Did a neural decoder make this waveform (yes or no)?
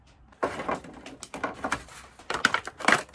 no